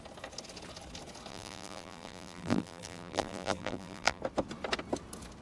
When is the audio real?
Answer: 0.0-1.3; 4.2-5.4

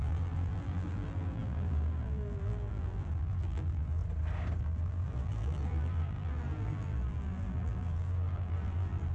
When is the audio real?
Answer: 4.0-4.6

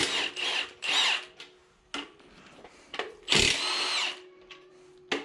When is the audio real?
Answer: 0.0-5.2

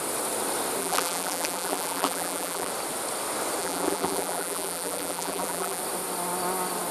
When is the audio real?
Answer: 0.0-0.8; 2.7-3.6; 5.8-6.9

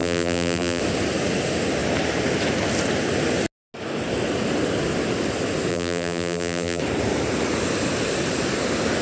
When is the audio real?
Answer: 0.8-5.7; 6.8-9.0

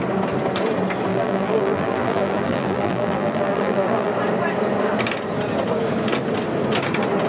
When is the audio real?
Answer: 0.0-1.1; 4.1-7.3

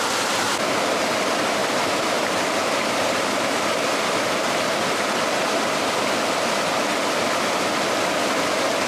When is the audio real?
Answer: 0.0-1.6; 3.6-8.9